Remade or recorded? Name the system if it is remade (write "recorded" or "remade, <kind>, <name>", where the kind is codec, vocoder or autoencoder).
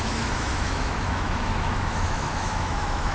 remade, autoencoder, DAC-VAE